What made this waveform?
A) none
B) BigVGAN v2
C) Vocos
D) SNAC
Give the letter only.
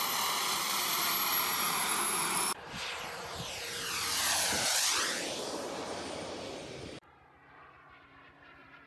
B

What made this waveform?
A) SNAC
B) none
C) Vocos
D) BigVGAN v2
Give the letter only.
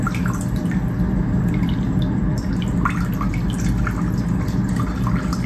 B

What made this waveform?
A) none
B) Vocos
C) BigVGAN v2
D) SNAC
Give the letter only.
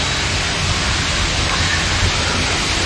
A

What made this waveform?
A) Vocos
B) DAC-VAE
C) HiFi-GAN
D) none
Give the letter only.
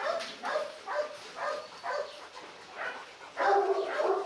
D